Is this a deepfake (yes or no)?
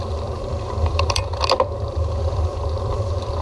yes